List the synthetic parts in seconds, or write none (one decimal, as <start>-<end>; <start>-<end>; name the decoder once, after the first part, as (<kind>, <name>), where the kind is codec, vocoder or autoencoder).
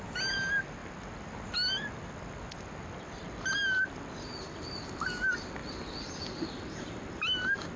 none